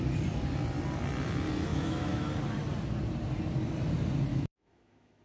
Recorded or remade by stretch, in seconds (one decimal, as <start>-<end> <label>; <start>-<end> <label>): 0.0-1.7 recorded; 1.7-2.3 remade; 2.3-4.3 recorded; 4.3-5.2 remade